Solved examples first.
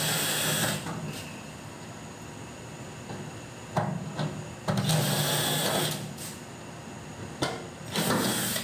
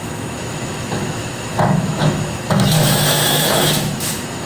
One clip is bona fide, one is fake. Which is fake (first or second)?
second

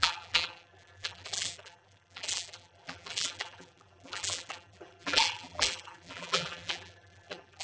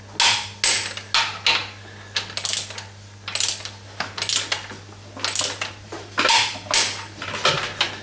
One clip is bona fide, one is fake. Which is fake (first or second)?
first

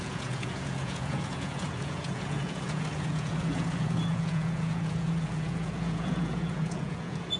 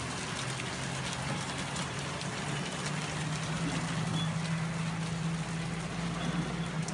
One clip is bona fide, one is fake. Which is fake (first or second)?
first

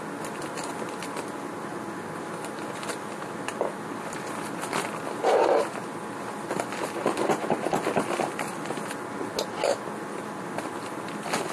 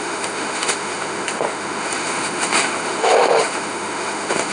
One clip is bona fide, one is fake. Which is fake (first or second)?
second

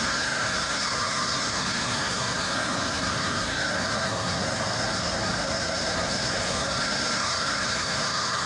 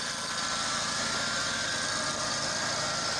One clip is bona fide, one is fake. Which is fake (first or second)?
first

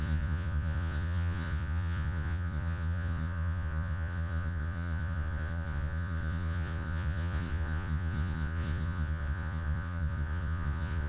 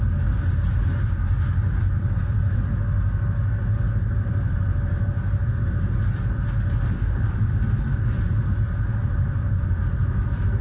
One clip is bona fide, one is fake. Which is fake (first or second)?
first